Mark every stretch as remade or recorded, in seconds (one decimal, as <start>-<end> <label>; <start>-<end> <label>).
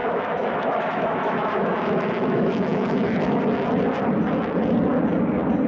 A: 0.0-3.4 remade; 3.4-5.7 recorded